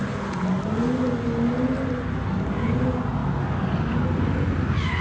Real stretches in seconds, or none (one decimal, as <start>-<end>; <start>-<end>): 0.0-5.0